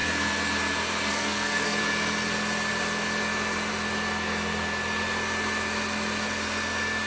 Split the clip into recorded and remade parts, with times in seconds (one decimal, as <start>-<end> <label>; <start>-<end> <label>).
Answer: 0.0-1.1 recorded; 1.1-1.8 remade; 1.8-7.1 recorded